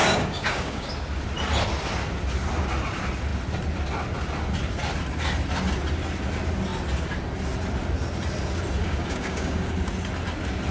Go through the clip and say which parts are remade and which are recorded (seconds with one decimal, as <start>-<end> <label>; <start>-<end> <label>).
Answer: 0.0-0.9 remade; 0.9-8.8 recorded; 8.8-9.7 remade; 9.7-10.7 recorded

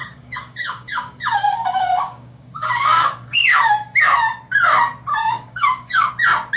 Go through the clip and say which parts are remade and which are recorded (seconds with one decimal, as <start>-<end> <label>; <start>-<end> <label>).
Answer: 0.0-4.0 remade; 4.0-5.2 recorded; 5.2-6.1 remade; 6.1-6.6 recorded

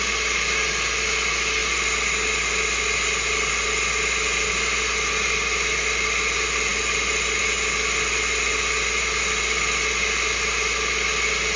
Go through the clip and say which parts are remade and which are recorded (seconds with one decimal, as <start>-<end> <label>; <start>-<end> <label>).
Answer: 0.0-11.6 recorded

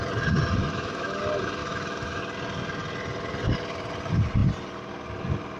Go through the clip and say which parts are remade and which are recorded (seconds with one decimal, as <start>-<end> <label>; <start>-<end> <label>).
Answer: 0.0-0.6 recorded; 0.6-1.2 remade; 1.2-1.6 recorded; 1.6-2.2 remade; 2.2-5.6 recorded

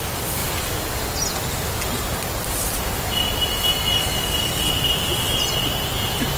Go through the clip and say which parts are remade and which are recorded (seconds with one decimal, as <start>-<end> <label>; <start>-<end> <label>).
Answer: 0.0-6.4 recorded

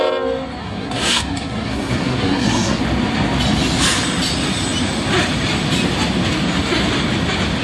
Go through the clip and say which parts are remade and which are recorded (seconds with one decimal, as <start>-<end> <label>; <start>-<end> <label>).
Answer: 0.0-0.6 recorded; 0.6-2.8 remade; 2.8-7.6 recorded

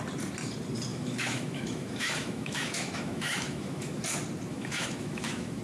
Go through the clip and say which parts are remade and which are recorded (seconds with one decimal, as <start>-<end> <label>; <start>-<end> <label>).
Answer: 0.0-0.9 recorded; 0.9-4.0 remade; 4.0-4.5 recorded; 4.5-5.6 remade